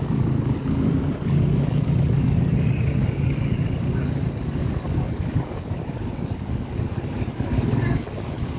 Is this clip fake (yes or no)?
yes